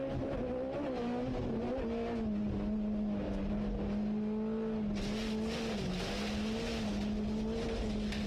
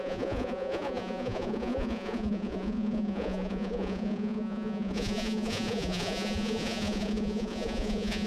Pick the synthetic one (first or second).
second